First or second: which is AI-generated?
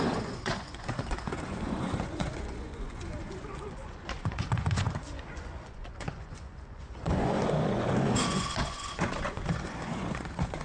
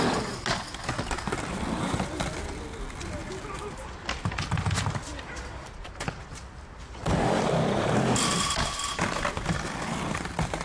first